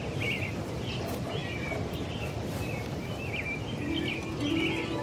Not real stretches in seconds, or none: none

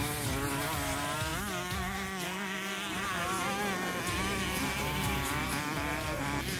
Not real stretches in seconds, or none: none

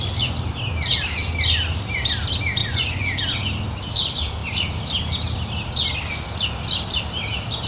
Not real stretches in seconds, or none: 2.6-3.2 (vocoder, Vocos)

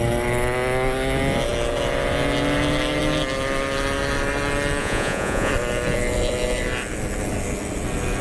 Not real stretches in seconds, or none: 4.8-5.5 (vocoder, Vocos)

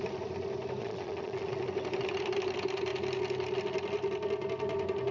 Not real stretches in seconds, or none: 0.8-1.6 (vocoder, Vocos)

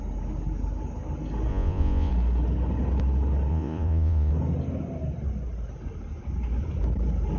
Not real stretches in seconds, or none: 1.5-2.1 (vocoder, Vocos); 3.5-4.3

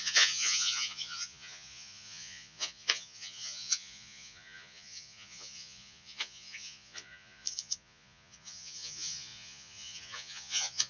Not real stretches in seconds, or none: 0.0-10.9 (vocoder, Vocos)